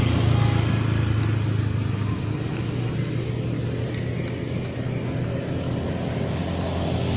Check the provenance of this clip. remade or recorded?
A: recorded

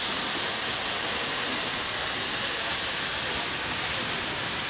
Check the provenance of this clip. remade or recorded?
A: recorded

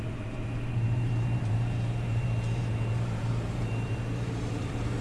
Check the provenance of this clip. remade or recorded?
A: remade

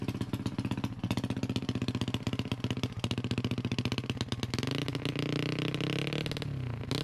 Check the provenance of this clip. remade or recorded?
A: recorded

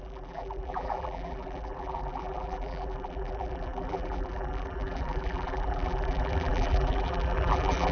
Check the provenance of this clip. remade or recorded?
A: remade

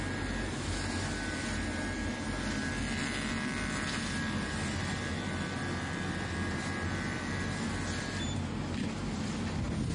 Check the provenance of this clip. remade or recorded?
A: recorded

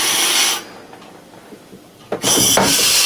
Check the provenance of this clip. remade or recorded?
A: recorded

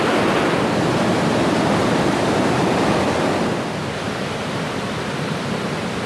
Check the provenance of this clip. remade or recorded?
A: remade